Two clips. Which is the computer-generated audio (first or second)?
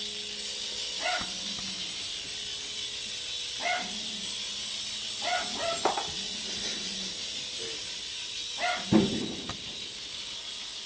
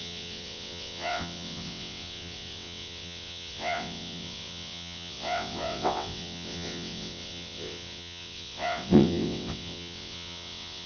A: second